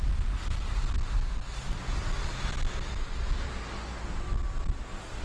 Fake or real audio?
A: real